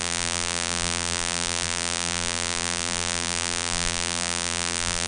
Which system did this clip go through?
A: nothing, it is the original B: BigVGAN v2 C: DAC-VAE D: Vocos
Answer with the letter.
B